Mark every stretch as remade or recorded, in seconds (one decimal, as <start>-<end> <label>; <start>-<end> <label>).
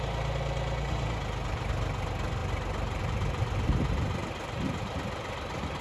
0.0-5.8 recorded